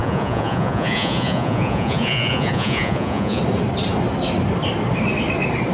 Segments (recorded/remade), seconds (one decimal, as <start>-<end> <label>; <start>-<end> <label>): 0.0-3.4 remade; 3.4-5.7 recorded